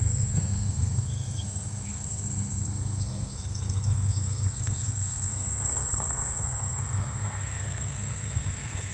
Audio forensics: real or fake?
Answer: fake